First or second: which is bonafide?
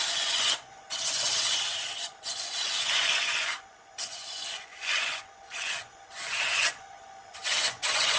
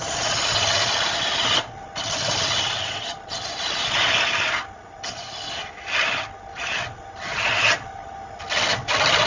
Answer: second